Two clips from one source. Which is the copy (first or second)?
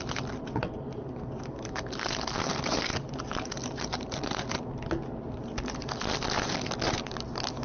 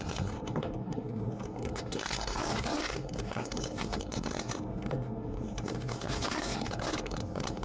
second